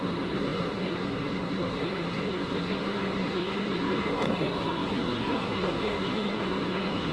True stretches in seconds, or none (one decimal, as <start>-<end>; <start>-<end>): none